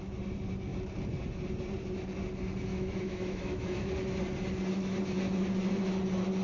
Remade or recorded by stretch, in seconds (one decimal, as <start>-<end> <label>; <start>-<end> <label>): 0.0-2.7 recorded; 2.7-3.9 remade; 3.9-6.4 recorded